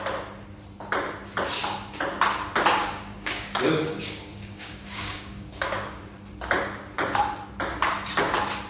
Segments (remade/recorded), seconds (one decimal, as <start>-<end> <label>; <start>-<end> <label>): 0.0-2.8 recorded; 2.8-6.0 remade; 6.0-8.7 recorded